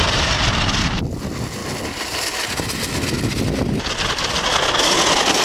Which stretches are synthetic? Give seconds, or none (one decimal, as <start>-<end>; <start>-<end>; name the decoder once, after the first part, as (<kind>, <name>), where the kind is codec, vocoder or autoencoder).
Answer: none